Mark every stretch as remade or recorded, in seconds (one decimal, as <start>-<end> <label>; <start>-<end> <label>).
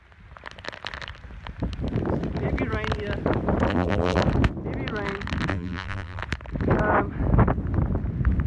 0.0-3.7 recorded; 3.7-4.2 remade; 4.2-5.5 recorded; 5.5-6.2 remade; 6.2-8.5 recorded